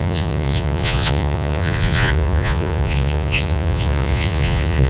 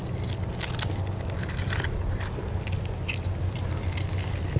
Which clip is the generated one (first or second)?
first